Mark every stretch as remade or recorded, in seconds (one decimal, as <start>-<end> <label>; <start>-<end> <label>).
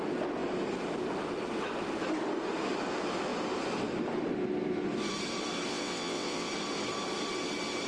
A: 0.0-5.7 recorded; 5.7-6.5 remade; 6.5-7.9 recorded